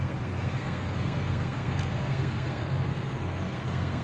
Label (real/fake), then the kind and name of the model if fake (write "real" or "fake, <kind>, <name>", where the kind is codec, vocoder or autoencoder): fake, codec, SNAC